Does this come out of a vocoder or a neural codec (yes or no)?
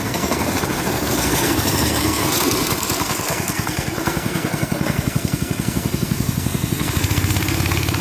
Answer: yes